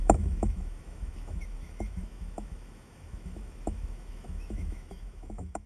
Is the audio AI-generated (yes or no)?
yes